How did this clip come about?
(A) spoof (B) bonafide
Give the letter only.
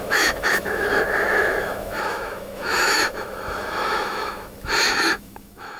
A